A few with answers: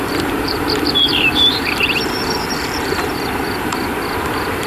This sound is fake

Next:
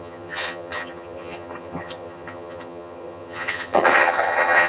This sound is fake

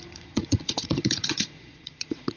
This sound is fake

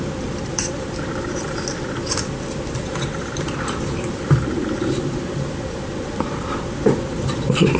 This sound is fake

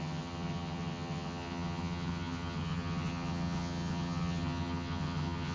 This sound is fake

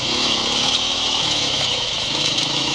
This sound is fake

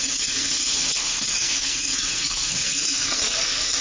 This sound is fake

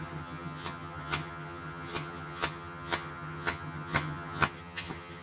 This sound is fake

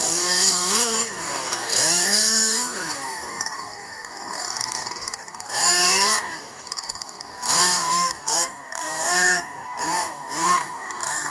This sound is fake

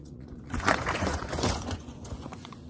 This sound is fake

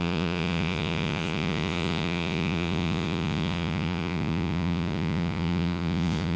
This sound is fake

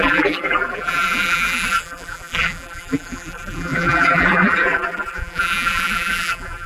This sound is fake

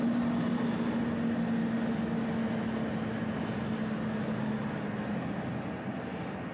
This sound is real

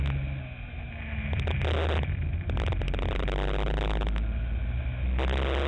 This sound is real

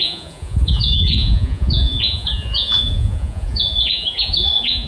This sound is fake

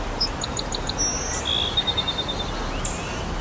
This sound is real